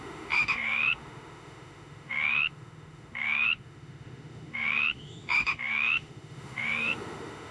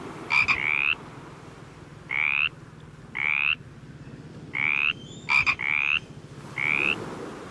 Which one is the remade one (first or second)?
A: first